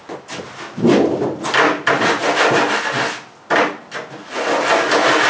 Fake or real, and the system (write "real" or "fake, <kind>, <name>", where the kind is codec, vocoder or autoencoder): real